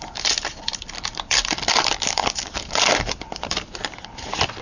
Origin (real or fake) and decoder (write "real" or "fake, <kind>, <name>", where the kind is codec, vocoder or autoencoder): fake, vocoder, BigVGAN v2